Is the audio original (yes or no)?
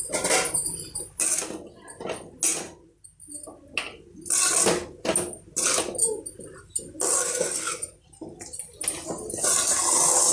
yes